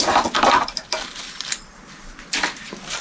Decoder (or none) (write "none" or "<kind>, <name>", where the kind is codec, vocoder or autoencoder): none